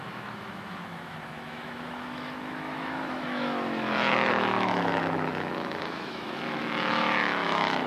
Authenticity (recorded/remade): remade